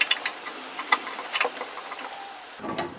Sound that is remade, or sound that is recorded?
recorded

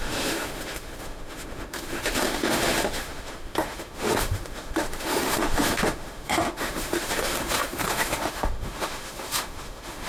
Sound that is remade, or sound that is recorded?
remade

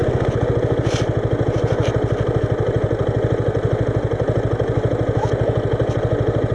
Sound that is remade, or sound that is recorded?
recorded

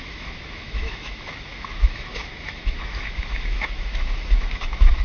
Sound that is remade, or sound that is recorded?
remade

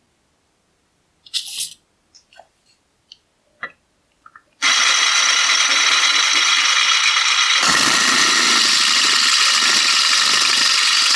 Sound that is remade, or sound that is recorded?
recorded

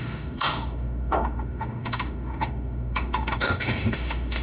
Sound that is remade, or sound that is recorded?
remade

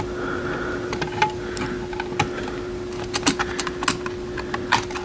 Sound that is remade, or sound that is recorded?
recorded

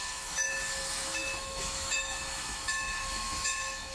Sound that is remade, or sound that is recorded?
remade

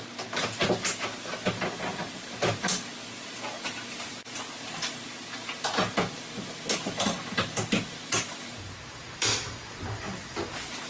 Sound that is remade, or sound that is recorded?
recorded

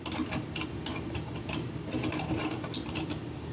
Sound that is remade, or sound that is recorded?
recorded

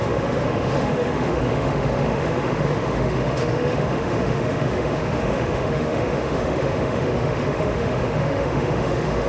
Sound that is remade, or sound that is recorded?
remade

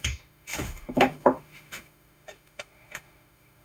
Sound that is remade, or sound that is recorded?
remade